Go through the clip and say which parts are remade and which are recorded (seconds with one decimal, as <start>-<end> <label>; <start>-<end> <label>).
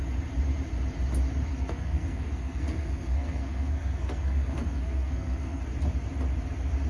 0.0-1.5 recorded; 1.5-5.6 remade; 5.6-6.9 recorded